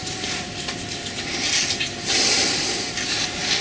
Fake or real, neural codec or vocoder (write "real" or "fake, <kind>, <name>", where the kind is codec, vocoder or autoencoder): fake, vocoder, BigVGAN v2